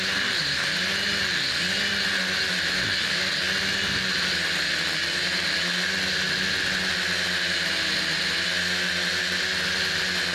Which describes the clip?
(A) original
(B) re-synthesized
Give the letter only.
A